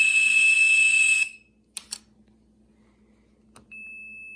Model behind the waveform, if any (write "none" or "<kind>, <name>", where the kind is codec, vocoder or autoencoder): none